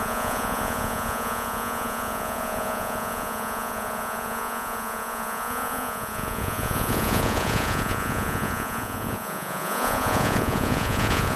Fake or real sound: fake